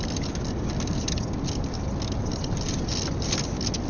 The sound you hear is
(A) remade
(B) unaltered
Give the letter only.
B